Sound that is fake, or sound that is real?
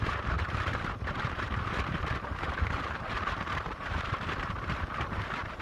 fake